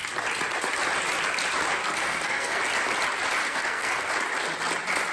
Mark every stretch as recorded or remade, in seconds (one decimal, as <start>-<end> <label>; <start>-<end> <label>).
0.0-1.8 recorded; 1.8-2.6 remade; 2.6-3.4 recorded; 3.4-4.1 remade; 4.1-5.1 recorded